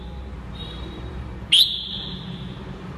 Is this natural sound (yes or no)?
no